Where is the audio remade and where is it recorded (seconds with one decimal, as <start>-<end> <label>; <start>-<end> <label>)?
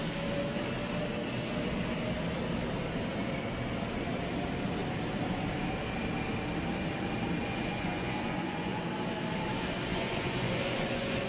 0.0-7.4 recorded; 7.4-8.8 remade; 8.8-9.9 recorded; 9.9-11.3 remade